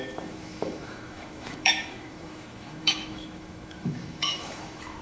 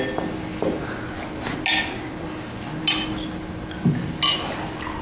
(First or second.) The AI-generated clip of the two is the first